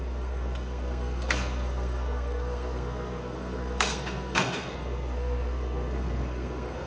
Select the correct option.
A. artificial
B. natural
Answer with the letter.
A